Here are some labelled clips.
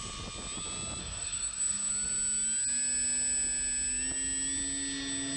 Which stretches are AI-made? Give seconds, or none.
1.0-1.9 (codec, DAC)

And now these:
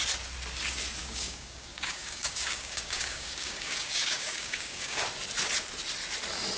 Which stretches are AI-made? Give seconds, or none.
1.0-5.0 (codec, DAC)

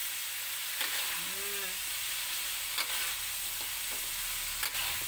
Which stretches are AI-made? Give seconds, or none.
none

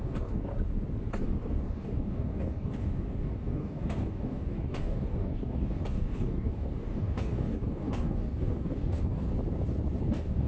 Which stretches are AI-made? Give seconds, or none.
0.0-0.5 (codec, DAC); 1.1-9.3; 10.0-10.5

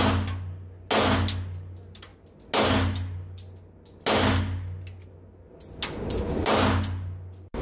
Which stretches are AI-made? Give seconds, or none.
none

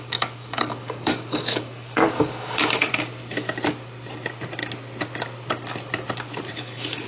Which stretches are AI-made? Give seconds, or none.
0.0-2.9 (codec, DAC); 6.5-7.1

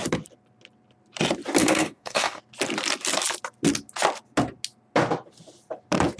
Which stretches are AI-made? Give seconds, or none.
1.6-2.4 (codec, DAC)